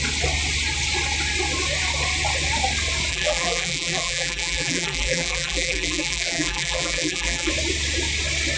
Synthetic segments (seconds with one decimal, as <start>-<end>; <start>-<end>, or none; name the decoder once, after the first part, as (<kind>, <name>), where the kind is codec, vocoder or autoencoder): 3.1-7.5 (vocoder, BigVGAN v2)